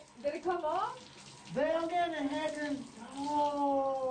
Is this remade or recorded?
recorded